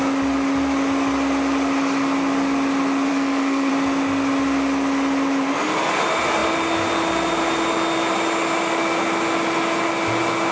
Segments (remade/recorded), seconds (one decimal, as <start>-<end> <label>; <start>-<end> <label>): 0.0-3.1 recorded; 3.1-3.7 remade; 3.7-10.5 recorded